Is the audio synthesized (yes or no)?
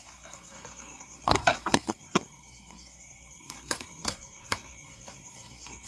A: yes